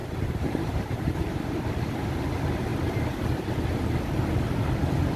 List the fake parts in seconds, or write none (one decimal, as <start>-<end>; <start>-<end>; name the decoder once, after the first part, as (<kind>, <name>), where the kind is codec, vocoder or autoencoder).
0.0-1.4 (vocoder, BigVGAN v2)